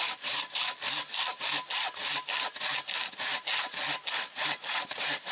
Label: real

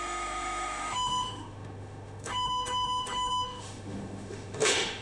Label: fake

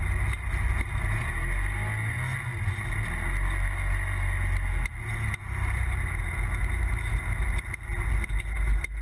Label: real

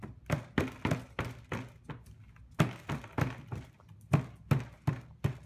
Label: real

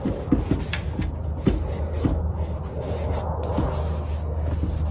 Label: real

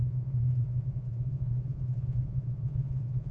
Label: fake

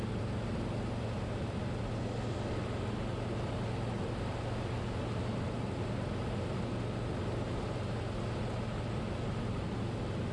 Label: real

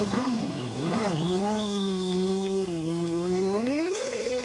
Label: fake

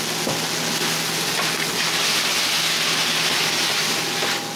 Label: real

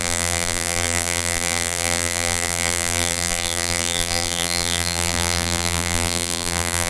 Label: fake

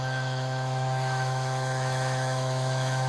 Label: fake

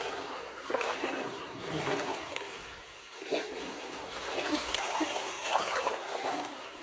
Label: fake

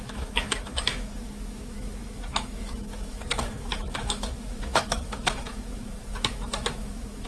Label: fake